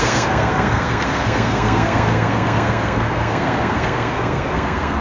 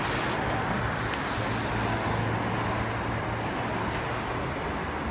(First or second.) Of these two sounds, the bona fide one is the second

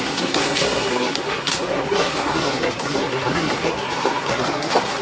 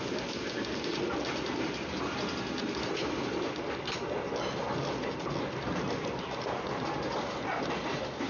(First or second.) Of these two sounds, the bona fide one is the second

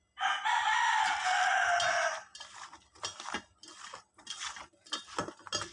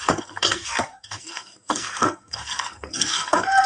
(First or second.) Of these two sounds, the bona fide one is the first